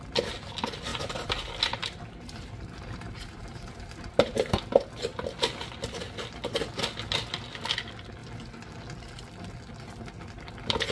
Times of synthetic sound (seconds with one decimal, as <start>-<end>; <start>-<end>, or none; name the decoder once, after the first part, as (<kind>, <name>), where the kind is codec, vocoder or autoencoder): 0.9-4.7 (vocoder, BigVGAN v2)